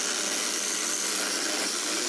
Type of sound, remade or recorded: recorded